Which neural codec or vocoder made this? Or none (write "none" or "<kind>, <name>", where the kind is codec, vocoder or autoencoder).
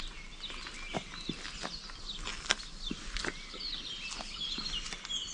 none